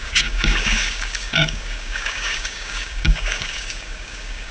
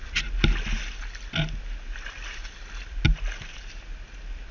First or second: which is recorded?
second